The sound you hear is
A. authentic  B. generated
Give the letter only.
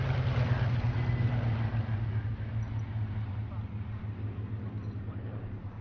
A